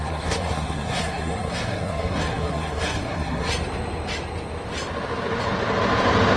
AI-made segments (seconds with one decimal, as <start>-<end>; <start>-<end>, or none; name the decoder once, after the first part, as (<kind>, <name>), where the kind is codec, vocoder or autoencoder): 0.0-3.5 (codec, SNAC)